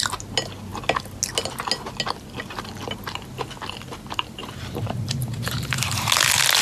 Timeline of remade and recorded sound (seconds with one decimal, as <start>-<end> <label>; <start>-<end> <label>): 0.0-4.4 recorded; 4.4-6.1 remade; 6.1-6.6 recorded